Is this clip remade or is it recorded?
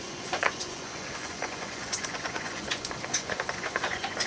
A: remade